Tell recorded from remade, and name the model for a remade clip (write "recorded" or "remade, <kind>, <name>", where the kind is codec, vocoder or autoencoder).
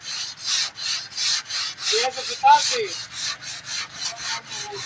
recorded